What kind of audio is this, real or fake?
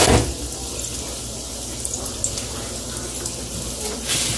real